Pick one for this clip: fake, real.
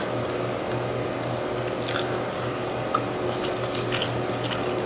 real